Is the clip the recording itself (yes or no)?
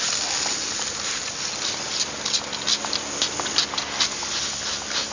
yes